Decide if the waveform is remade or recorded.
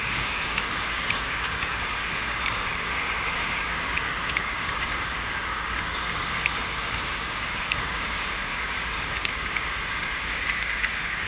remade